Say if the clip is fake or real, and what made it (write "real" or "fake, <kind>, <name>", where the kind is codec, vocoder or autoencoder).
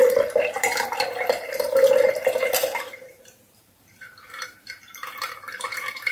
fake, vocoder, BigVGAN v2